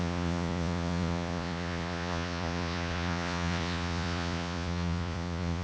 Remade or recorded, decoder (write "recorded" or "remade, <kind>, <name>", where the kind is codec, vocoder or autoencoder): remade, vocoder, Vocos